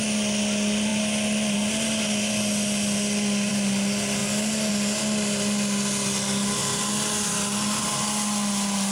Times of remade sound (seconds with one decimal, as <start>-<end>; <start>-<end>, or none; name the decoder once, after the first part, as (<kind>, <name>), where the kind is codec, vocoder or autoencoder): none